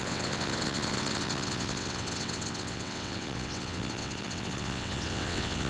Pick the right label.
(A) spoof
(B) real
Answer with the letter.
A